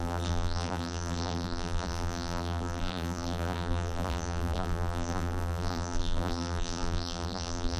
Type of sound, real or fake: fake